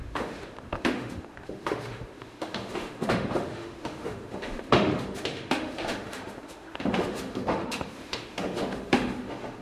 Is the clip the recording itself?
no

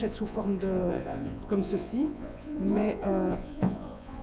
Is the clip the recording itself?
no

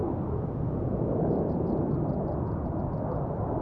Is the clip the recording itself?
yes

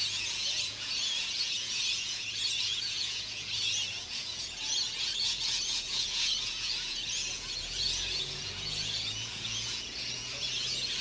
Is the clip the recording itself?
no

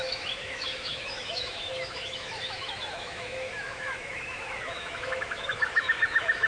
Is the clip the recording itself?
no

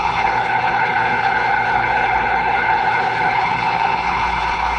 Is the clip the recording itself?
no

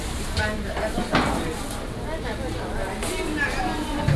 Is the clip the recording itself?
yes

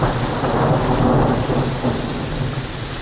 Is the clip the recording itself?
yes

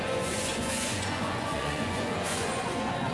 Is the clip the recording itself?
no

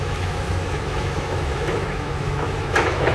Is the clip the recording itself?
no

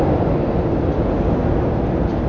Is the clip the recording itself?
yes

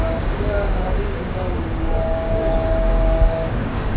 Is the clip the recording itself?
no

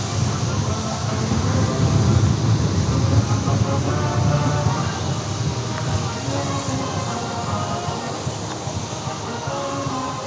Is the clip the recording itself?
yes